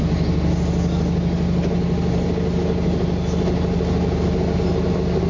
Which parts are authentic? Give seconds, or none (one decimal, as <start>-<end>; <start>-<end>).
0.0-5.3